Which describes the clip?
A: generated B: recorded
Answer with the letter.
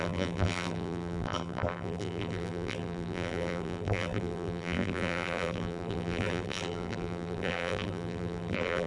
A